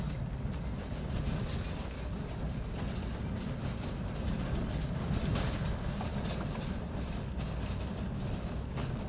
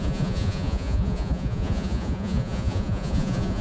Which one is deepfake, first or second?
second